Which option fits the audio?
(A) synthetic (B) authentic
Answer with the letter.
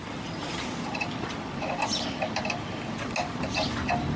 B